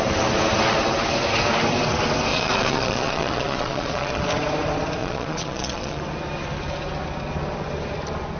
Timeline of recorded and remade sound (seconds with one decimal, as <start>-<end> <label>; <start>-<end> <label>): 0.0-2.3 recorded; 2.3-4.2 remade; 4.2-5.0 recorded; 5.0-6.0 remade; 6.0-8.4 recorded